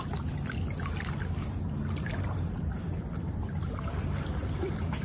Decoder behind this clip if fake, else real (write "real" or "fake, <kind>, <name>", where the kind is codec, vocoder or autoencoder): real